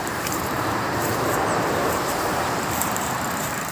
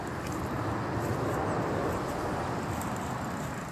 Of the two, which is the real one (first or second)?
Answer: second